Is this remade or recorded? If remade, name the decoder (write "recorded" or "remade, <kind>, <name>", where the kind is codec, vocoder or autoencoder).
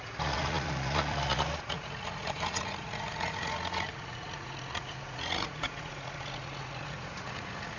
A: remade, vocoder, Vocos